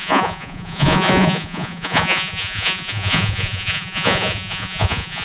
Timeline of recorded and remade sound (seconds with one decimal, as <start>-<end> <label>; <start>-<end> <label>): 0.0-5.2 remade